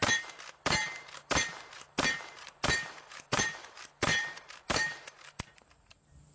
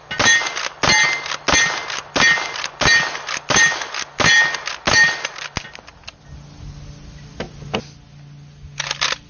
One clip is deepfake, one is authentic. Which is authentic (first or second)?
second